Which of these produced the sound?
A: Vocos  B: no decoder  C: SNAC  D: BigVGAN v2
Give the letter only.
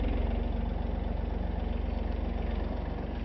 B